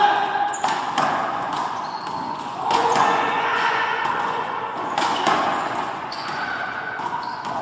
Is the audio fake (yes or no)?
yes